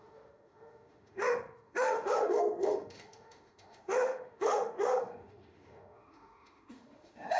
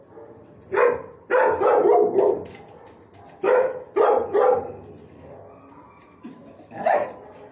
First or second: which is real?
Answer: second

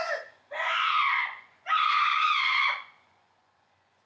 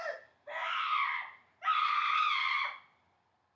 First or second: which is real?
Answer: second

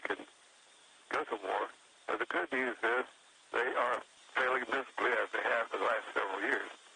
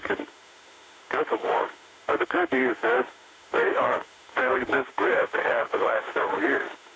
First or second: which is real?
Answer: first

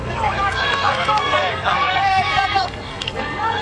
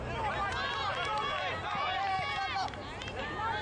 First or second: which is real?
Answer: second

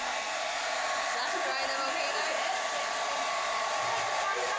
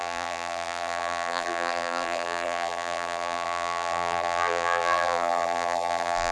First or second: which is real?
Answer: first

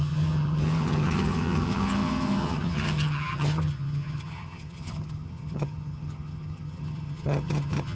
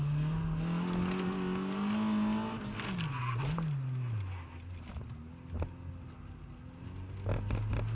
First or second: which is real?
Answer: second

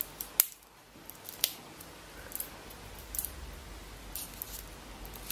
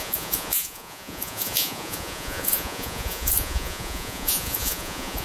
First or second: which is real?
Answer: first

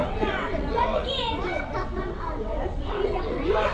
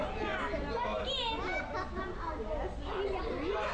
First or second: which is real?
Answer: second